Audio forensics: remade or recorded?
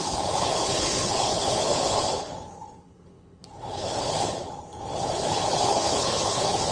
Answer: remade